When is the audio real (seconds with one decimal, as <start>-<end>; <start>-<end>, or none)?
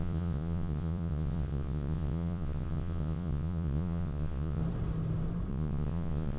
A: 4.6-5.5